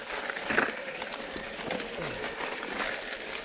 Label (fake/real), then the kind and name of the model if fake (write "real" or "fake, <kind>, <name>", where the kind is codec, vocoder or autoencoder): real